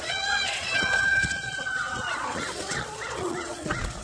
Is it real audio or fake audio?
fake